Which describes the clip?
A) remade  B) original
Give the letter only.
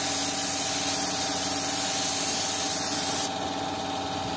B